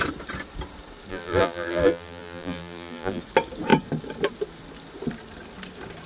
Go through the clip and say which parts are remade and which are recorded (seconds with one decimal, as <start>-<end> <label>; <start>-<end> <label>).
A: 0.0-1.1 recorded; 1.1-3.2 remade; 3.2-6.1 recorded